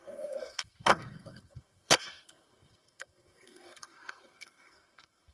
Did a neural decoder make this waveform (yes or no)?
yes